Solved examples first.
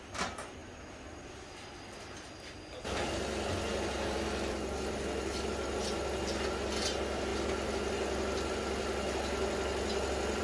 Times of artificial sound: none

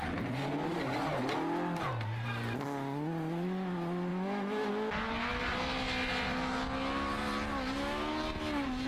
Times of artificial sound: 4.1-4.7 (autoencoder, DAC-VAE)

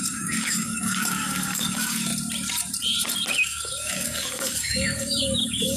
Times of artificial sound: 0.0-2.1 (codec, DAC); 3.3-5.8

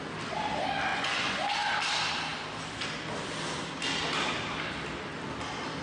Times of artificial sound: 0.9-1.4 (vocoder, Vocos)

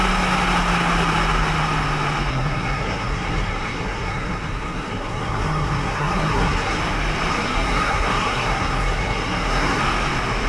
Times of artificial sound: 2.3-6.8 (codec, SNAC); 7.3-9.8

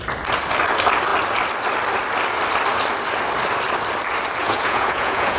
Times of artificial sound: 4.4-5.4 (vocoder, Vocos)